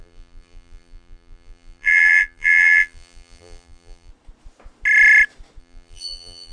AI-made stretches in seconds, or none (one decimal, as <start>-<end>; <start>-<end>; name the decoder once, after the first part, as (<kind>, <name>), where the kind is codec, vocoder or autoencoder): 0.0-4.1 (vocoder, BigVGAN v2); 5.6-6.5